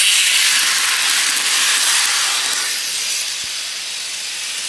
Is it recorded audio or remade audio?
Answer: recorded